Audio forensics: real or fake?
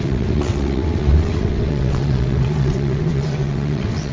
fake